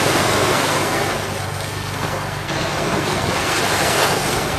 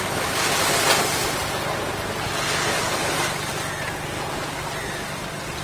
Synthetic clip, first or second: first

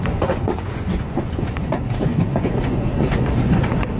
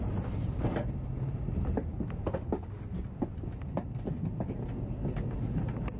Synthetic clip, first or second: first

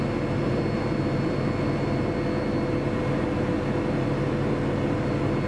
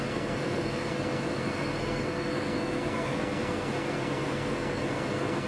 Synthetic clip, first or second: second